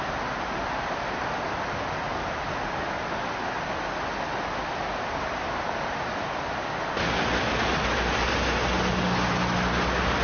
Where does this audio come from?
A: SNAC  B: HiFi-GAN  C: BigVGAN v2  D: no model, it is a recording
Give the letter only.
D